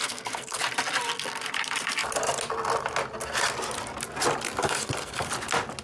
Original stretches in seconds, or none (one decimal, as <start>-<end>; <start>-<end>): 0.6-4.6; 5.3-5.8

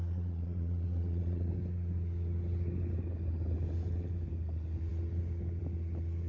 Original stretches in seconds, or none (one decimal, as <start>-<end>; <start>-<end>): 1.5-6.3

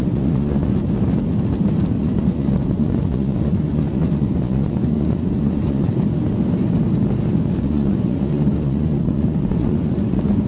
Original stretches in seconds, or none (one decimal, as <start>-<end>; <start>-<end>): 0.7-2.0; 5.9-7.6

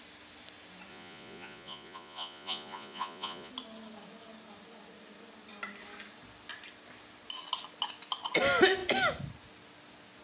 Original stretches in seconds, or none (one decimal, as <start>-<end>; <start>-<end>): 0.0-0.9; 3.5-10.2

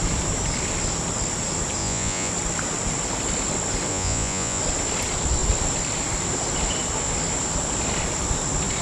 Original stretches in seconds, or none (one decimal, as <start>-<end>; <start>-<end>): 0.0-1.8; 2.3-3.9; 4.6-8.8